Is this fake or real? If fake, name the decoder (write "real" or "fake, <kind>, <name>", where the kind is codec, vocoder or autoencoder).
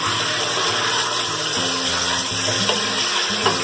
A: real